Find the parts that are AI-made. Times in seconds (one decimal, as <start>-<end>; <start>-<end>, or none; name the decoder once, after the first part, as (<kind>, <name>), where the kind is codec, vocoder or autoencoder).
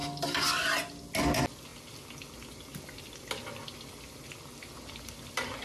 none